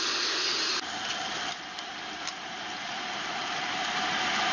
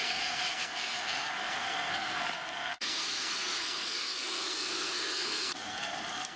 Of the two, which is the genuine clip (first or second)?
first